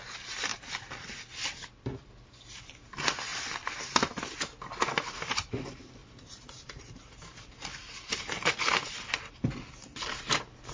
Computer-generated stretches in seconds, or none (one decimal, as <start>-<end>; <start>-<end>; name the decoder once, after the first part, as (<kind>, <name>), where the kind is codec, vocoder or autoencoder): 6.0-8.9 (vocoder, BigVGAN v2)